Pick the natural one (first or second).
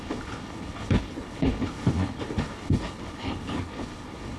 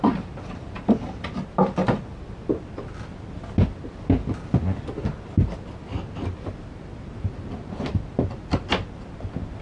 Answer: second